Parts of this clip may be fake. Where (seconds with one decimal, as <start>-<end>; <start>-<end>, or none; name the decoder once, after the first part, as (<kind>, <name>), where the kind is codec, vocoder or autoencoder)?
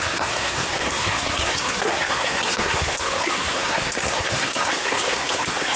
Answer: 0.0-5.8 (codec, SNAC)